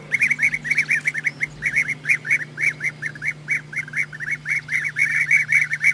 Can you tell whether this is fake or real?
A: real